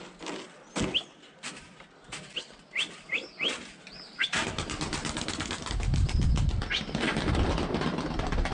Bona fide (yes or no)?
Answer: yes